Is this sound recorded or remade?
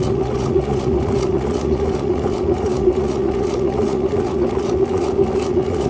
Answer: remade